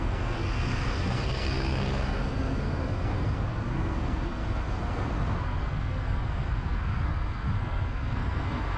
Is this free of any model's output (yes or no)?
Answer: no